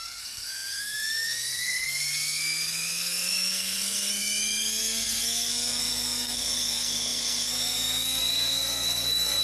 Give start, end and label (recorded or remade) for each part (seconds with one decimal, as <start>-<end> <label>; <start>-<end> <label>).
0.0-9.4 remade